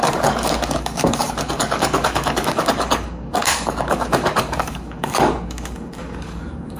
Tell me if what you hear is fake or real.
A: fake